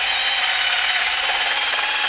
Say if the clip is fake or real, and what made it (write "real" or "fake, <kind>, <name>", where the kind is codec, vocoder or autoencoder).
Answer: real